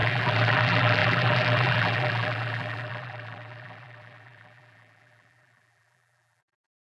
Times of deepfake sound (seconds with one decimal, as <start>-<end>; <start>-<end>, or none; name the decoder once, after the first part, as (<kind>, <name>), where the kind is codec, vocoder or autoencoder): 0.0-7.0 (vocoder, BigVGAN v2)